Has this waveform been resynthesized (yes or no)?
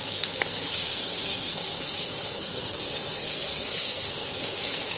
yes